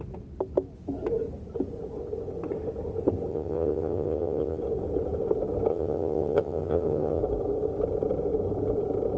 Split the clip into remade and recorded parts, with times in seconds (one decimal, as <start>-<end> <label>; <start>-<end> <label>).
0.0-3.3 recorded; 3.3-4.6 remade; 4.6-5.7 recorded; 5.7-7.2 remade; 7.2-9.2 recorded

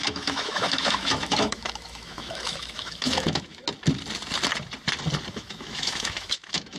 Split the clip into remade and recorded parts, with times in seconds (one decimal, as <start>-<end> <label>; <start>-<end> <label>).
0.0-3.6 remade; 3.6-5.3 recorded; 5.3-6.8 remade